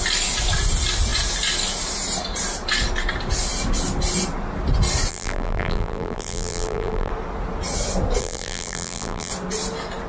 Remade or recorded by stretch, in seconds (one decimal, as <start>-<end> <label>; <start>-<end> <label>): 0.0-5.1 recorded; 5.1-7.1 remade; 7.1-8.2 recorded; 8.2-9.3 remade; 9.3-10.1 recorded